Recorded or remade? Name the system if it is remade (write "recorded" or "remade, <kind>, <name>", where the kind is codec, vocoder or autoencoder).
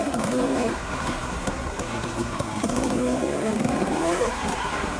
remade, codec, SNAC